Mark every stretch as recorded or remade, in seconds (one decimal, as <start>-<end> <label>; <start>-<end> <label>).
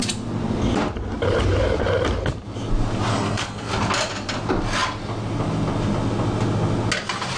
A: 0.0-3.1 recorded; 3.1-3.7 remade; 3.7-7.4 recorded